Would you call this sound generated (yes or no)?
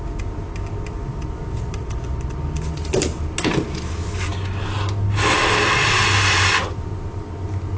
no